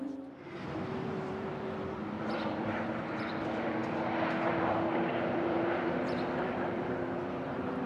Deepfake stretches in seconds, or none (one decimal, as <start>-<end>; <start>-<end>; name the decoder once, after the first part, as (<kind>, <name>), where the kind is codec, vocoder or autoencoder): 0.0-3.8 (vocoder, BigVGAN v2); 4.4-7.9